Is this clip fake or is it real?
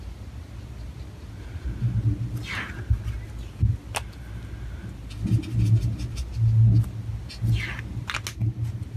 real